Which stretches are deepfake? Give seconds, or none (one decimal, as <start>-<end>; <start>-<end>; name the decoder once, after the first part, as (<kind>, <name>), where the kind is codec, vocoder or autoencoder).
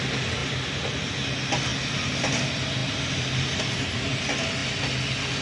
0.4-1.1 (vocoder, BigVGAN v2)